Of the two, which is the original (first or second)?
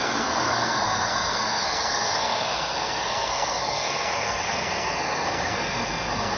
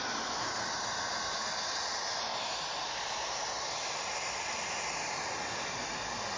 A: second